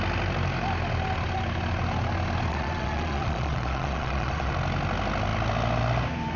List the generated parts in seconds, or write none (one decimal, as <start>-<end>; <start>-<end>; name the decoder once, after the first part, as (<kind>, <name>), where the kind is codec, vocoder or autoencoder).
2.5-4.5 (vocoder, Vocos)